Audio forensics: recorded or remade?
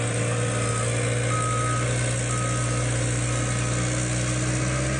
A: recorded